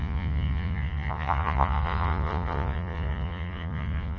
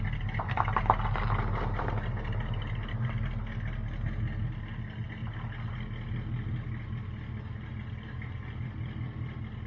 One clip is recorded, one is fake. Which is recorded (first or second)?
second